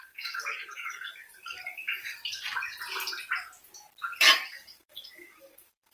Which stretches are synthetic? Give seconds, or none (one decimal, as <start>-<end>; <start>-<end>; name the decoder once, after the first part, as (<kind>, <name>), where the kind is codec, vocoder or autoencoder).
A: 0.0-2.2 (codec, DAC); 4.2-5.9